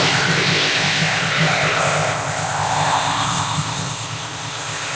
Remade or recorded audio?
remade